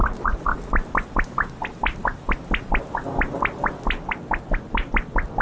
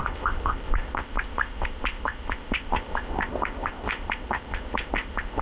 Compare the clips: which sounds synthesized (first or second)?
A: second